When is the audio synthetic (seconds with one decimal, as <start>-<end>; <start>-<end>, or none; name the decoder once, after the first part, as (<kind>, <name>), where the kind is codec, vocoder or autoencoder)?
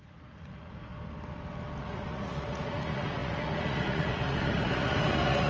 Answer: 0.0-0.9 (vocoder, Vocos); 1.8-5.5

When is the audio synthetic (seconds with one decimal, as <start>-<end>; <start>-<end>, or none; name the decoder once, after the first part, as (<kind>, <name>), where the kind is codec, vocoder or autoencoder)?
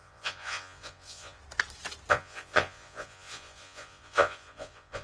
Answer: 0.0-1.4 (vocoder, Vocos); 2.1-5.0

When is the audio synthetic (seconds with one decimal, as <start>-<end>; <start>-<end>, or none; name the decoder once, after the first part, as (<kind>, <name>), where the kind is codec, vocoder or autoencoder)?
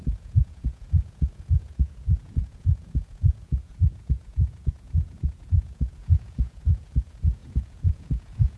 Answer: 0.0-8.6 (vocoder, Vocos)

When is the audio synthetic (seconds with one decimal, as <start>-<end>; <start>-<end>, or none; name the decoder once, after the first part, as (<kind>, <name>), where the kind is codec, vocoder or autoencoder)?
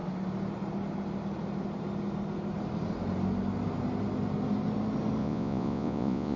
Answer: 5.2-6.4 (vocoder, Vocos)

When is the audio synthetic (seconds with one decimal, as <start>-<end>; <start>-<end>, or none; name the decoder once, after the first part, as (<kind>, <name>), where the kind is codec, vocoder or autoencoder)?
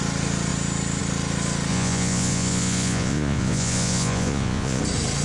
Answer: 1.7-4.8 (vocoder, Vocos)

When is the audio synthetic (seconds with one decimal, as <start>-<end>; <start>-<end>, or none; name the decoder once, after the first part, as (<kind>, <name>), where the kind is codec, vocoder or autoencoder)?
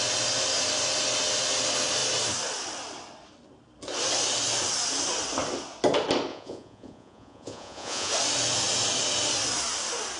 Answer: 6.3-8.1 (vocoder, Vocos)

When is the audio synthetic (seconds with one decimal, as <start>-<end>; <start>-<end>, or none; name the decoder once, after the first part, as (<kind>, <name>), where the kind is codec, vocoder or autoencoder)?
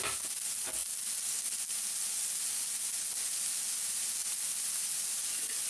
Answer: none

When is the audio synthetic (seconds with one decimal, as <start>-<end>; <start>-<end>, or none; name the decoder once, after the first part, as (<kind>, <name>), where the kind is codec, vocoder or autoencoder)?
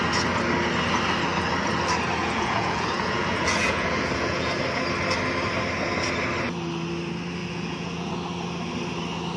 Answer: 2.2-4.5 (vocoder, Vocos); 7.4-8.1